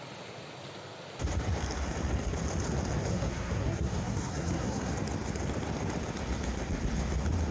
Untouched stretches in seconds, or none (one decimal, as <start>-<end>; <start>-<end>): 0.0-3.1; 4.9-7.5